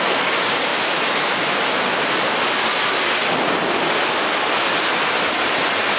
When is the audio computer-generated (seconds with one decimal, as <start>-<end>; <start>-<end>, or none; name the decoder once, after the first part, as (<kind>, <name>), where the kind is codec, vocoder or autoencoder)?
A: none